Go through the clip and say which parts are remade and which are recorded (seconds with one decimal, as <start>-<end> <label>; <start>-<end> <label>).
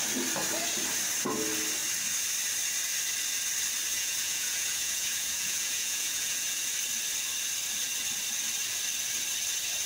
0.0-3.9 recorded; 3.9-6.7 remade; 6.7-9.9 recorded